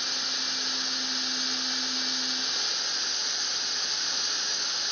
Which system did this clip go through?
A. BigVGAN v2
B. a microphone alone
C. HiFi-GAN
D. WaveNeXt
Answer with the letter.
B